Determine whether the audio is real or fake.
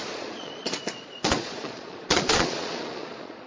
fake